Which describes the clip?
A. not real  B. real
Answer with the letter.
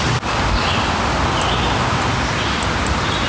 B